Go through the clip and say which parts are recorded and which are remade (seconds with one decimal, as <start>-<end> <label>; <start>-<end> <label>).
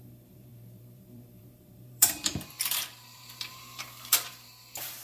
0.0-5.0 remade